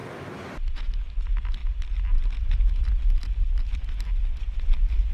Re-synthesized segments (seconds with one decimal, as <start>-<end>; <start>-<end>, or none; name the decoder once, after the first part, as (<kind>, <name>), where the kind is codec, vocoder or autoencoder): none